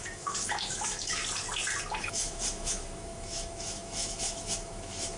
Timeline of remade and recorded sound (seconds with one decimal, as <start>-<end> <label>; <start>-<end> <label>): 0.0-1.2 remade; 1.2-2.0 recorded; 2.0-5.2 remade